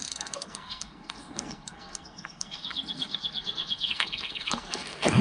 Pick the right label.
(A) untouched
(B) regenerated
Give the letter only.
B